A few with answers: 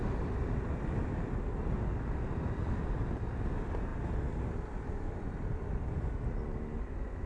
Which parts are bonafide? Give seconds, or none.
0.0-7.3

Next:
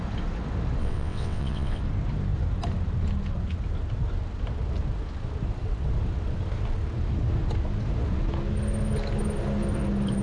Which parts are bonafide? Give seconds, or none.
0.0-0.8; 1.8-10.2

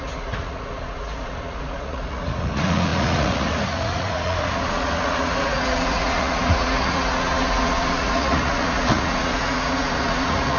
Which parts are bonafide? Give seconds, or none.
none

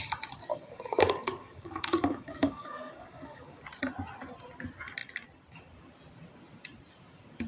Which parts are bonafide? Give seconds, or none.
0.0-0.5; 3.6-7.5

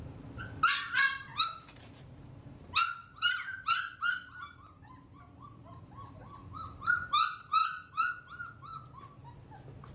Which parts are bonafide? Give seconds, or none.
0.0-3.0; 5.5-7.6; 8.1-9.9

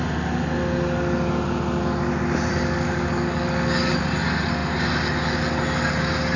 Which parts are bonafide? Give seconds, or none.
0.0-2.5; 4.0-6.4

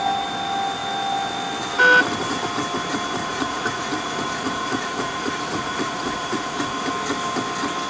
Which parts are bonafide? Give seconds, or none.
0.0-3.2; 6.9-7.9